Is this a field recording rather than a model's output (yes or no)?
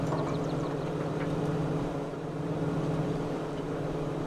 no